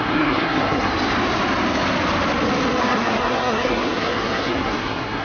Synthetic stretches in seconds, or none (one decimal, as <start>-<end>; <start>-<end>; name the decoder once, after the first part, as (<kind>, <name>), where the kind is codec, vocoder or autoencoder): 0.0-0.9 (codec, SNAC); 2.8-5.2

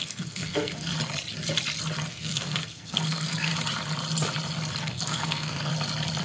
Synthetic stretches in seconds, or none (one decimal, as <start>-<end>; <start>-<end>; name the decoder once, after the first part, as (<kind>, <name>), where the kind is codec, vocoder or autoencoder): 0.0-0.9 (codec, SNAC); 2.1-3.5; 4.8-5.7

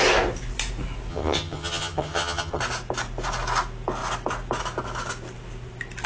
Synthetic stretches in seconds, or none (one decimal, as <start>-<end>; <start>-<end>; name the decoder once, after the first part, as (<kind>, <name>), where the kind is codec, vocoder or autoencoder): 1.1-2.6 (vocoder, HiFi-GAN)

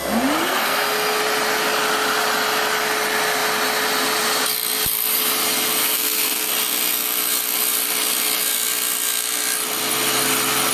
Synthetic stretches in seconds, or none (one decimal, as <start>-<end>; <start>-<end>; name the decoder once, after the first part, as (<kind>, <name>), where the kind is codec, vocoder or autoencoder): 0.4-1.2 (codec, SNAC); 5.8-6.5

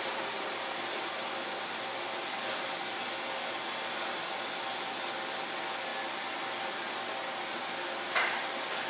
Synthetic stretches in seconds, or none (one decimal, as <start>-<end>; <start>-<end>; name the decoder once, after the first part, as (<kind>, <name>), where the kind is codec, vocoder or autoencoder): none

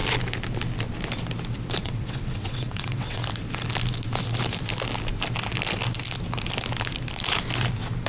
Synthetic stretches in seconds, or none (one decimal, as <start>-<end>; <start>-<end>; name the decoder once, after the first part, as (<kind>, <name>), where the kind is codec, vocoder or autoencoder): 1.8-3.2 (vocoder, WaveNeXt)